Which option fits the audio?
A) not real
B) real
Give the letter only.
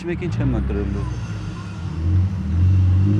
B